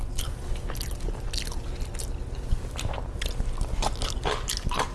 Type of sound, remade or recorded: recorded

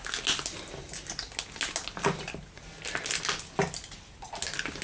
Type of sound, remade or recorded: recorded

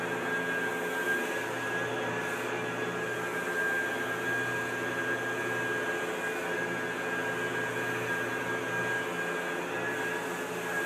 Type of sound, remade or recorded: recorded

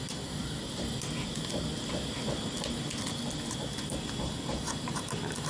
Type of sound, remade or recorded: recorded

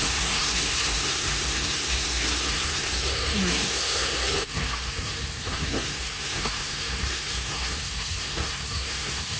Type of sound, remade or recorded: remade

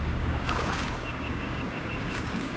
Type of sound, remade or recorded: remade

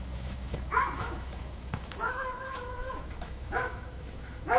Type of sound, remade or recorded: remade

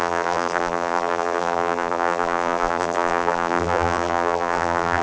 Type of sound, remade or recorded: remade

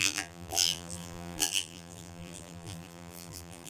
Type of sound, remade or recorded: remade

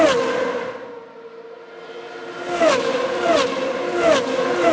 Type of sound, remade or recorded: recorded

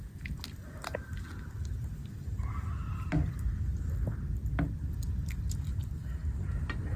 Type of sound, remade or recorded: remade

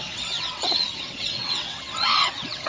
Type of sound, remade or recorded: remade